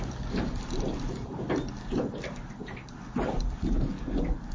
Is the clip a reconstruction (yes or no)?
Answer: no